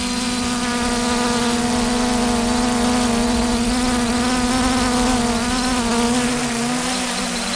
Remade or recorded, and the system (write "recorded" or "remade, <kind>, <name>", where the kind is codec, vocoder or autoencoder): recorded